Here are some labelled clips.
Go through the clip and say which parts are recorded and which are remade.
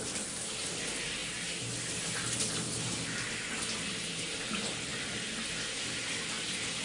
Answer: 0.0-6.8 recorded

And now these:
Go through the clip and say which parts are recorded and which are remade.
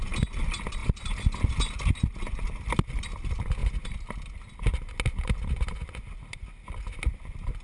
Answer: 0.0-7.6 recorded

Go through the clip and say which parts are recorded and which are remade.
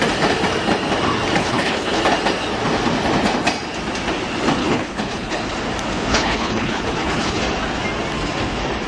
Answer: 0.0-1.4 recorded; 1.4-2.0 remade; 2.0-4.6 recorded; 4.6-5.4 remade; 5.4-6.1 recorded; 6.1-7.4 remade; 7.4-8.9 recorded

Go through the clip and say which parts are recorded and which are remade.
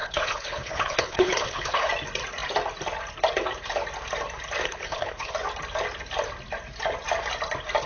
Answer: 0.0-1.9 remade; 1.9-4.6 recorded; 4.6-5.3 remade; 5.3-7.9 recorded